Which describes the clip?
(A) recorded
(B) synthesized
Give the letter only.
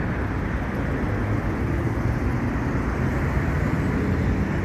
A